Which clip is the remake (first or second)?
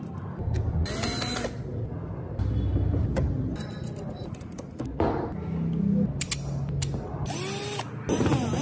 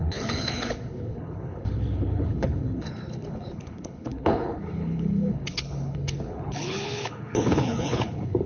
second